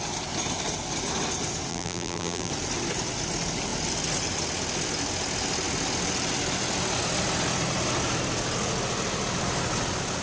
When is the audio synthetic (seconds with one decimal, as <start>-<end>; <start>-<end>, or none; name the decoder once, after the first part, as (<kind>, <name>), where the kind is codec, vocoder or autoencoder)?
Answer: 1.7-2.5 (vocoder, BigVGAN v2)